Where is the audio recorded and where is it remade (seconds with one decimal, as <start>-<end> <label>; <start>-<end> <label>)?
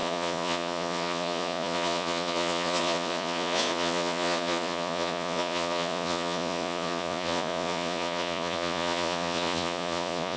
0.0-10.4 remade